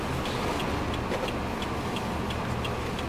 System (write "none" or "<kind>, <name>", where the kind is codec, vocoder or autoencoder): none